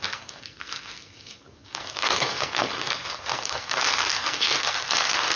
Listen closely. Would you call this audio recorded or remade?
remade